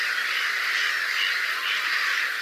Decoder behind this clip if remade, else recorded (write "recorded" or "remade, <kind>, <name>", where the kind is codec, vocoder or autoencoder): recorded